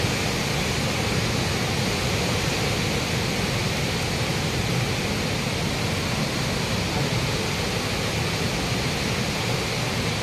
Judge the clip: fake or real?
real